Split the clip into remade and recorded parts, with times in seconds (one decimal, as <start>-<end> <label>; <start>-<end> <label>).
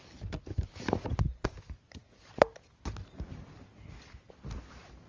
0.0-2.0 remade; 2.0-4.0 recorded; 4.0-5.1 remade